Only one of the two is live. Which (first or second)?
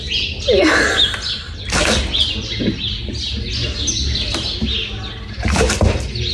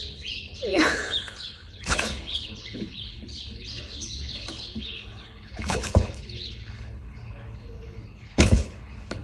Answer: first